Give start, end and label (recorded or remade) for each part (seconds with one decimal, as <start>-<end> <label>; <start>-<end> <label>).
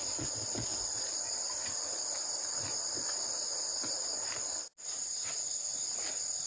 0.0-6.5 recorded